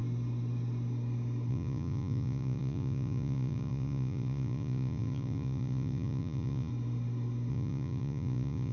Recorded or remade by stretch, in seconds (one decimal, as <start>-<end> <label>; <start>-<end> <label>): 0.0-1.5 recorded; 1.5-6.7 remade; 6.7-7.5 recorded; 7.5-8.7 remade